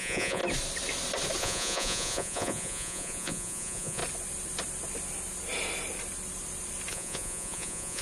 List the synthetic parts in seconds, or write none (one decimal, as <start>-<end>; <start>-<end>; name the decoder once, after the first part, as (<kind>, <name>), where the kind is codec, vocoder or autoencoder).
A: 0.0-0.4 (vocoder, Vocos); 1.4-4.0; 6.9-8.0